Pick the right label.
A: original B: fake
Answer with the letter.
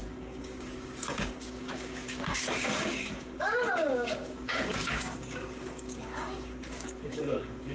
B